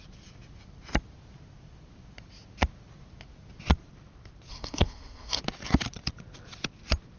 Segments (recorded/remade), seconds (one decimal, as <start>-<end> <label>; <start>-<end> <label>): 0.0-4.5 recorded; 4.5-5.4 remade; 5.4-7.2 recorded